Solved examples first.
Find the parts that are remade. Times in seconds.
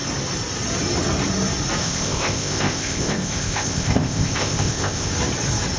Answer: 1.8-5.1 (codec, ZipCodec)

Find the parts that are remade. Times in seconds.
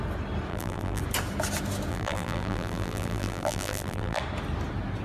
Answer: 0.5-1.0 (vocoder, BigVGAN v2); 1.9-4.2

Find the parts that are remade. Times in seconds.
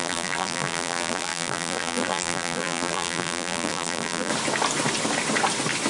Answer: 0.0-4.3 (vocoder, BigVGAN v2)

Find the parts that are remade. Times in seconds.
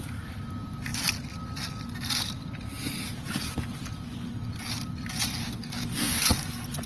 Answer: 5.4-6.2 (codec, DAC)